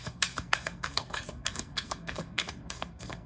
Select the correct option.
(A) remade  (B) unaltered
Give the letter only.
A